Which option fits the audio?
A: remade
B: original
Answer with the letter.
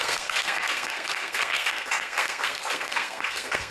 A